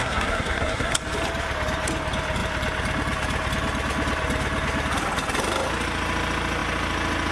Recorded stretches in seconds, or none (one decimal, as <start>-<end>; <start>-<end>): 1.0-7.3